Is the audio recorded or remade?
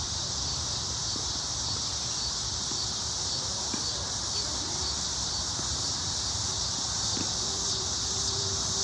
remade